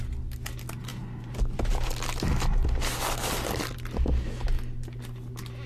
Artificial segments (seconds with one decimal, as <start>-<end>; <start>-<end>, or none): none